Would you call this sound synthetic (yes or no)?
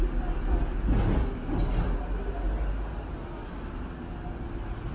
no